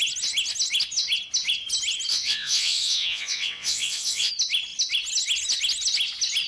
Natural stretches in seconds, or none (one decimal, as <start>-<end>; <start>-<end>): 0.0-2.1; 4.3-6.5